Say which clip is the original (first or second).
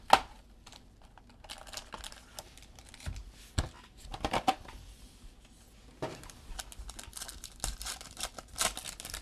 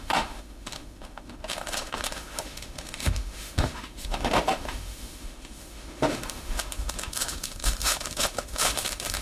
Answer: first